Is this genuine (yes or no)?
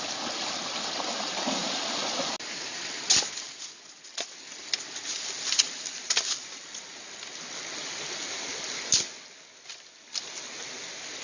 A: yes